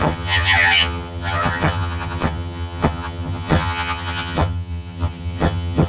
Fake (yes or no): yes